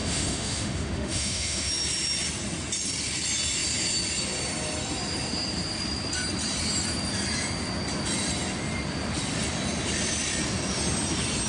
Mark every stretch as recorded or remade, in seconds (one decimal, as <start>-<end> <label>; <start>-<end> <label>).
0.0-1.7 remade; 1.7-11.5 recorded